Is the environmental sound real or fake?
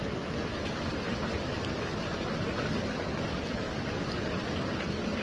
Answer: real